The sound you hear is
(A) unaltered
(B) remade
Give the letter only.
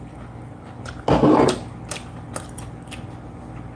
A